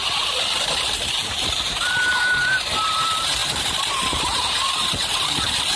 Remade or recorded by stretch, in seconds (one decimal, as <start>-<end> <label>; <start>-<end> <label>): 0.0-5.8 remade